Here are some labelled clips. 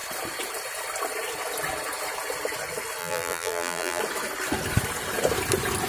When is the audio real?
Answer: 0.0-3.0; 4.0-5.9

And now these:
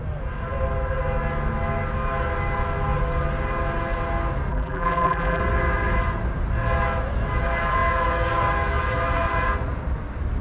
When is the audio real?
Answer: 0.0-4.5; 5.4-10.4